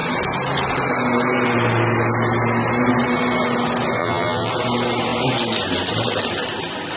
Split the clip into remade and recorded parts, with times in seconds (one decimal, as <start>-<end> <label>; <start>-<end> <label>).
0.0-4.0 recorded; 4.0-4.5 remade; 4.5-7.0 recorded